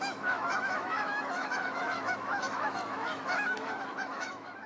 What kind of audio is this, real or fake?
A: fake